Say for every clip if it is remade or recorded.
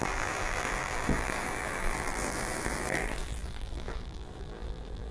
remade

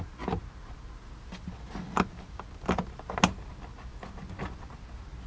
recorded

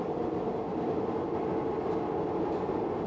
recorded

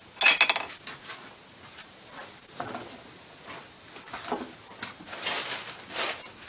recorded